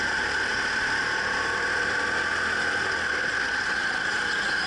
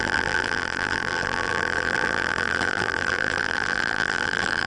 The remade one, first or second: second